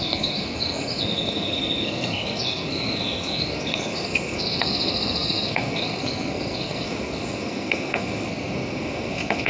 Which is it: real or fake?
fake